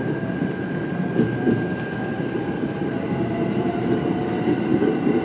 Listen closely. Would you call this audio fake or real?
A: fake